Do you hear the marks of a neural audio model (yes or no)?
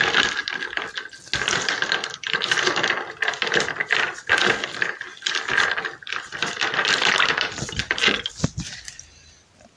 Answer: no